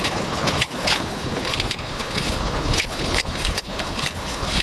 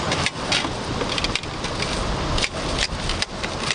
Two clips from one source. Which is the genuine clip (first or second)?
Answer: second